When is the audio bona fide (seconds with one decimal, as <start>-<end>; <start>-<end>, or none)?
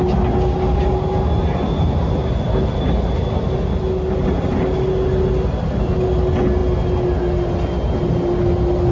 0.0-8.9